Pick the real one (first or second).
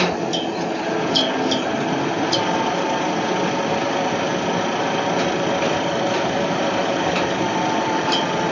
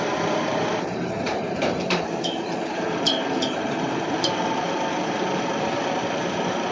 first